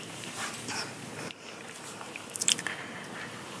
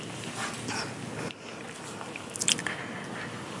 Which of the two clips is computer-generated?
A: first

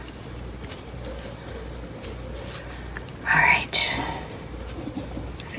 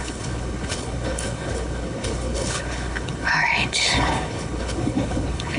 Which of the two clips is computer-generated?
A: second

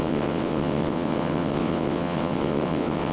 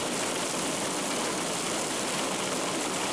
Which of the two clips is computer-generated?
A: first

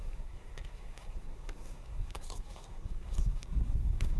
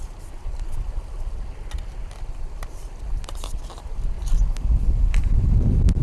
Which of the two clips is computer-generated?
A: first